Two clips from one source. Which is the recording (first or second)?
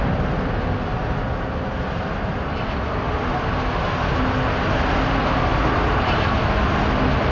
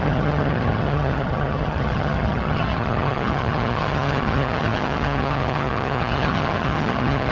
first